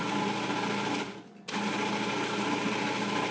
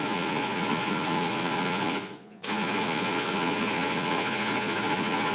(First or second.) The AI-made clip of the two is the second